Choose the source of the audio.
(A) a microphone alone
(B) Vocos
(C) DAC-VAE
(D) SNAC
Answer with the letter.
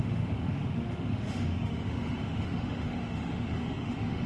C